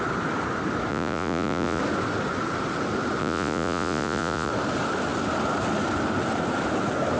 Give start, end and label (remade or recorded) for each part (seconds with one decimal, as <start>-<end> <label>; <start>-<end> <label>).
0.0-0.9 recorded; 0.9-1.8 remade; 1.8-3.2 recorded; 3.2-4.5 remade; 4.5-7.2 recorded